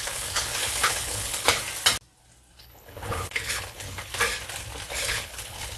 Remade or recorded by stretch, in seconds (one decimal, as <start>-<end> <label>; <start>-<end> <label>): 0.0-1.6 remade; 1.6-2.6 recorded; 2.6-4.2 remade; 4.2-4.9 recorded; 4.9-5.8 remade